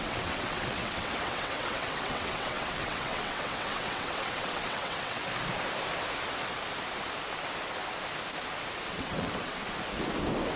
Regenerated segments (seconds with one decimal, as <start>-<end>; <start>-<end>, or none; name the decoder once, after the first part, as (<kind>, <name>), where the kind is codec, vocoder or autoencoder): 0.0-5.2 (vocoder, WaveNeXt); 8.9-9.6